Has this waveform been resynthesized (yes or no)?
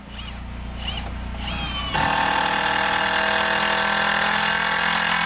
no